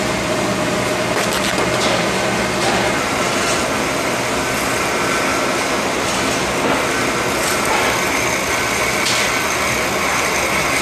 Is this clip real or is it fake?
real